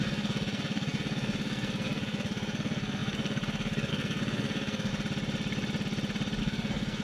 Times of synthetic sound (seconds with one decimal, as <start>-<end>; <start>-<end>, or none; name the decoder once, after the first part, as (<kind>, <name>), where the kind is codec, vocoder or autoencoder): 0.0-4.9 (codec, SNAC); 6.4-7.0